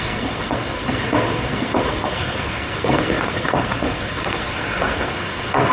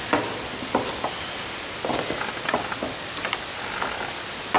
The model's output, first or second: first